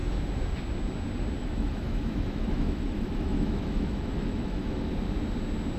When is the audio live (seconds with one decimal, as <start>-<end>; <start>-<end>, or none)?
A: 0.0-1.4; 4.9-5.8